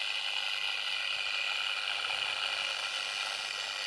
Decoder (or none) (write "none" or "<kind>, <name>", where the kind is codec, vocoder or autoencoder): none